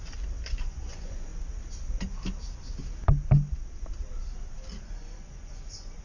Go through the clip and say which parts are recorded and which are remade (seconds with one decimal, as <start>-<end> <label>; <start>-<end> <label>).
0.0-0.6 recorded; 0.6-1.3 remade; 1.3-4.9 recorded; 4.9-6.0 remade